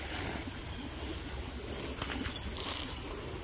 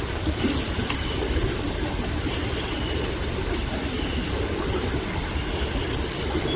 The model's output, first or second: second